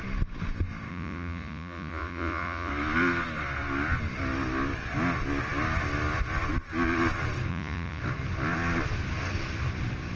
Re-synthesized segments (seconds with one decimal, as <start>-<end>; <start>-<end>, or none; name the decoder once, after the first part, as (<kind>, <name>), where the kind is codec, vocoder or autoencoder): 0.9-2.7 (vocoder, Vocos); 7.5-8.0